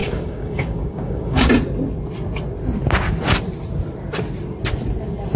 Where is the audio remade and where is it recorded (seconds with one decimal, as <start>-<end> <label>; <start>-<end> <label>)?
0.0-1.5 remade; 1.5-5.4 recorded